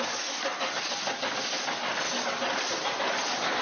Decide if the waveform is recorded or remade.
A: recorded